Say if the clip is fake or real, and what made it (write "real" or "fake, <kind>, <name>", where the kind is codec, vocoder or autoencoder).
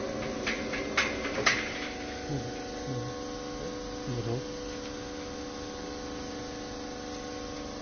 real